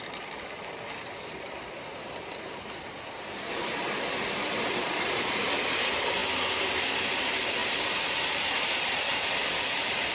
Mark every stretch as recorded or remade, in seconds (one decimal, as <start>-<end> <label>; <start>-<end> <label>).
0.0-6.2 remade; 6.2-6.7 recorded; 6.7-7.6 remade; 7.6-8.8 recorded; 8.8-10.1 remade